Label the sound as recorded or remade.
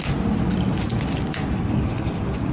recorded